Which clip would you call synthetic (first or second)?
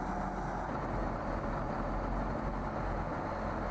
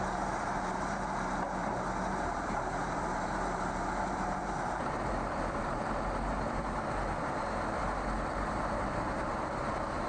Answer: second